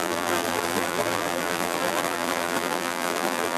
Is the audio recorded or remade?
remade